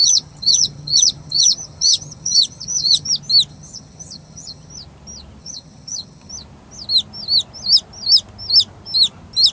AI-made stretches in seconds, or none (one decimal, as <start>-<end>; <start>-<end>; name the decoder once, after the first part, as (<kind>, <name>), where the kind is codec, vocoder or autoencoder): 0.0-3.1 (vocoder, HiFi-GAN); 3.5-4.7; 5.4-6.3